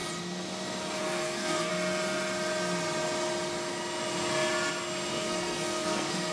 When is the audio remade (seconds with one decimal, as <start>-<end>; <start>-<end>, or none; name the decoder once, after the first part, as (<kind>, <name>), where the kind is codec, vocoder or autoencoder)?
1.0-1.7 (codec, SNAC); 5.1-6.3